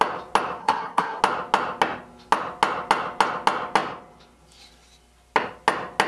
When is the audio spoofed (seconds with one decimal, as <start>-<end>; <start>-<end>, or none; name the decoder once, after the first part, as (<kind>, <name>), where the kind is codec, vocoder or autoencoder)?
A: 0.6-1.2 (codec, SNAC)